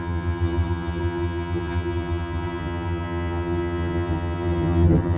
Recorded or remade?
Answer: remade